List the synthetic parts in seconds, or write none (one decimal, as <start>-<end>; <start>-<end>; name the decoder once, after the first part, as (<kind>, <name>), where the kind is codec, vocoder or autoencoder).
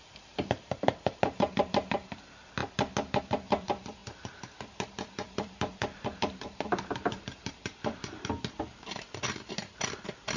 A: 0.0-2.6 (vocoder, BigVGAN v2); 3.2-10.4